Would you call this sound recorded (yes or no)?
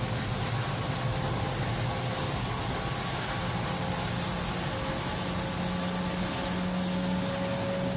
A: yes